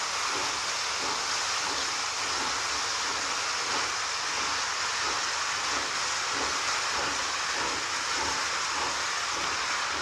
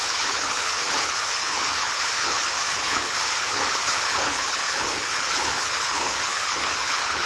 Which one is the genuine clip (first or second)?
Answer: first